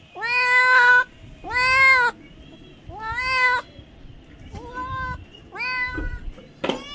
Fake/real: real